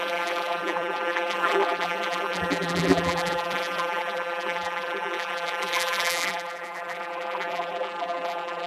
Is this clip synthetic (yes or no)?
yes